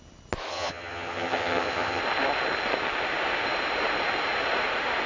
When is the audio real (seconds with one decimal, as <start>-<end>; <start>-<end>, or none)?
0.0-0.5; 2.0-5.1